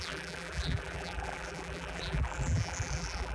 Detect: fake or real fake